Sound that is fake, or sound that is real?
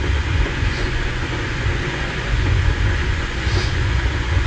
fake